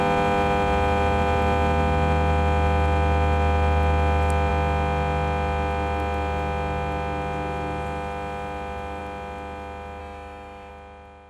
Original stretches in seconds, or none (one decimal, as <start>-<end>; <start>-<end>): 0.0-10.0; 10.7-11.3